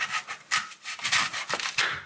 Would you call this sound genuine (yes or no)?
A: yes